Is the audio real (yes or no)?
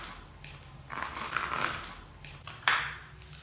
yes